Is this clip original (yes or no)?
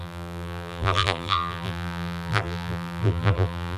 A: no